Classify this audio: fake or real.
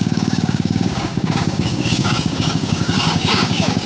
fake